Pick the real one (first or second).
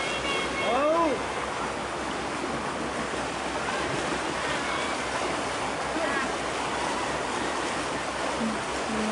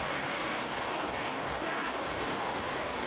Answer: first